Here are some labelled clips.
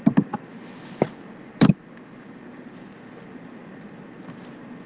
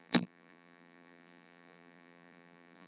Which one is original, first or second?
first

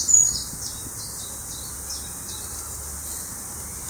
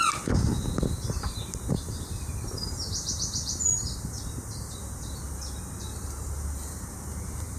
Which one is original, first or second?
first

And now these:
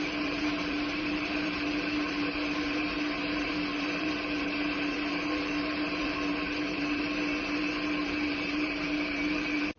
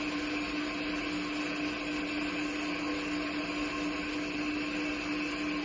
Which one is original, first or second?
second